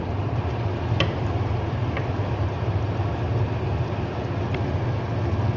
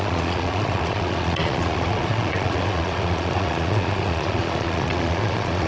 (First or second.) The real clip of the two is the first